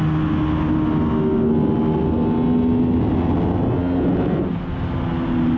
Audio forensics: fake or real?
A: real